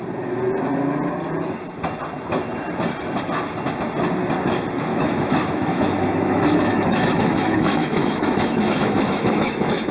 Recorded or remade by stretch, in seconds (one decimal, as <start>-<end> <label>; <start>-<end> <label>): 0.0-4.9 recorded; 4.9-9.9 remade